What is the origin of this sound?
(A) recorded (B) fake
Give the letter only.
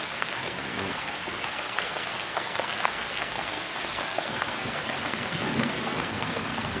B